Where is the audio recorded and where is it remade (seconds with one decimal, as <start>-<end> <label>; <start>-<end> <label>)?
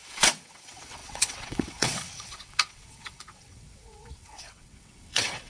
0.0-5.5 remade